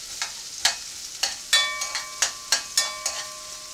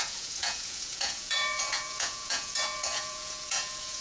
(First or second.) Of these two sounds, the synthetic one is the second